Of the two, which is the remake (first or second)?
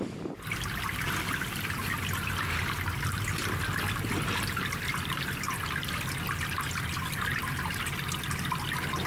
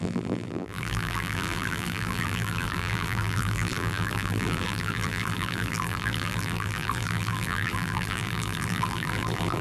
second